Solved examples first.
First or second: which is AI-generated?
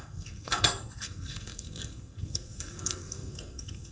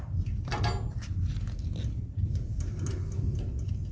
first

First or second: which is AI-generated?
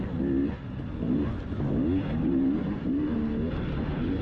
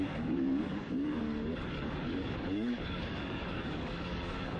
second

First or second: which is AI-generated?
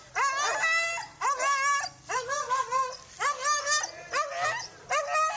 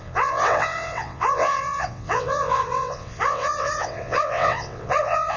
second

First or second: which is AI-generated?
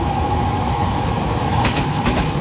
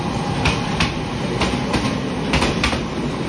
first